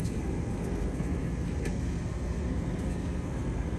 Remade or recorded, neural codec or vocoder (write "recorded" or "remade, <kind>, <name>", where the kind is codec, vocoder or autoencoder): remade, codec, SNAC